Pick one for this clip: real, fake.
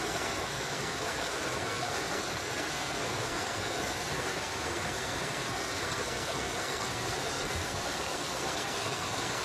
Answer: fake